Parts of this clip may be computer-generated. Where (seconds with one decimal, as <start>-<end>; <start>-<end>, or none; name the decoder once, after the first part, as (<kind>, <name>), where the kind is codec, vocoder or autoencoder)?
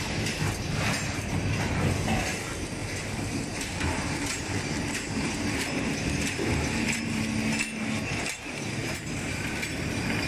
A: 2.8-7.1 (vocoder, BigVGAN v2); 8.8-9.8